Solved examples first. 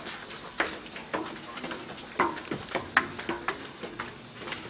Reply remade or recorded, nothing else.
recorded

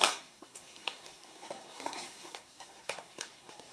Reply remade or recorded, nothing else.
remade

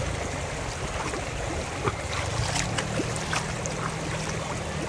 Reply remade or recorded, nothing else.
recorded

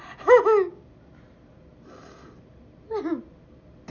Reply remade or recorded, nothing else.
recorded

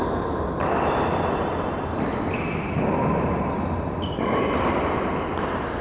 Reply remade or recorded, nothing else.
recorded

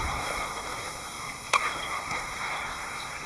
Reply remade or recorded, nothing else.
remade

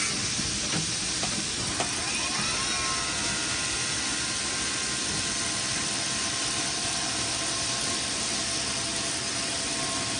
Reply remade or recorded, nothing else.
recorded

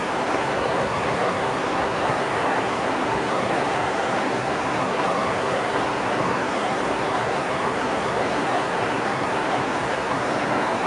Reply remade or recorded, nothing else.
remade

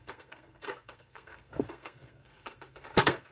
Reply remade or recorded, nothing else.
remade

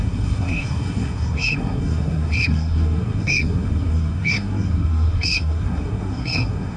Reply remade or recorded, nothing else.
remade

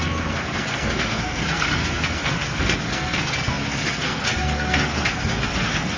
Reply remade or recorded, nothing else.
remade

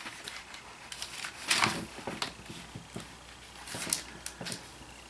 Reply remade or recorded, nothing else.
recorded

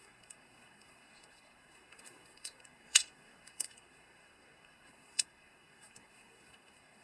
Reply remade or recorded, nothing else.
remade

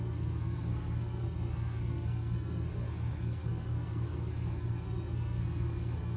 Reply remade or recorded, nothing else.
remade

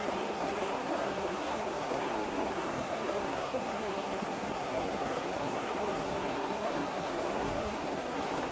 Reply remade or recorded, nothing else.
remade